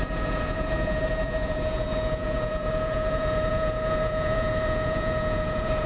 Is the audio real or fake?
fake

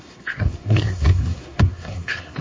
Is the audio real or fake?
fake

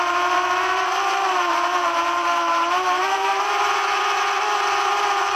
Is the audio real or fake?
fake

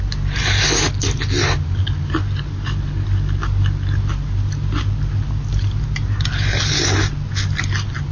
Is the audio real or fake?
real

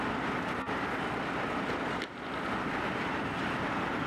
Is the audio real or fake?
real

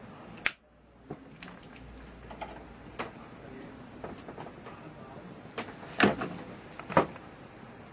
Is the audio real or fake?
real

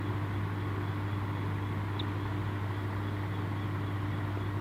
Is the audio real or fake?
real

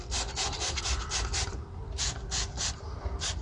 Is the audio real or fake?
real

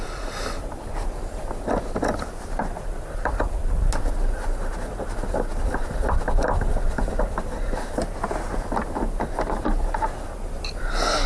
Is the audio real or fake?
real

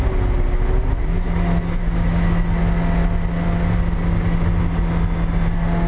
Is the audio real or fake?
real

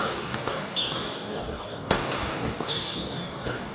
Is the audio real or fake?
fake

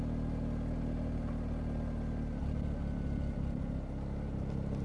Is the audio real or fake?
real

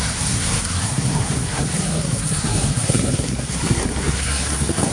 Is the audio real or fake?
fake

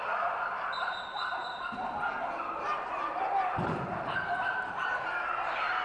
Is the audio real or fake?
real